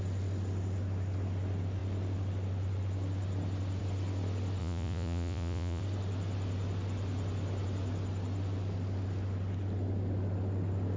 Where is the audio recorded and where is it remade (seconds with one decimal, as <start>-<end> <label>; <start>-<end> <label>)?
0.0-4.6 recorded; 4.6-5.8 remade; 5.8-11.0 recorded